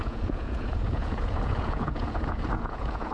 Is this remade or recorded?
remade